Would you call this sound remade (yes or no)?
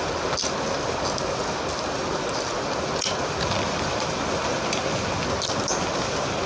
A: no